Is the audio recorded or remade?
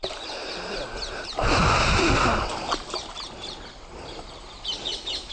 recorded